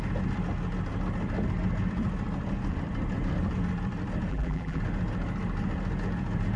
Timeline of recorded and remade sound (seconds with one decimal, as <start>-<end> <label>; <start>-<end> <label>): 0.0-4.3 recorded; 4.3-4.8 remade; 4.8-6.6 recorded